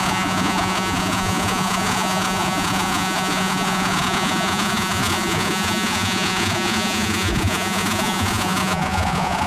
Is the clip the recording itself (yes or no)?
no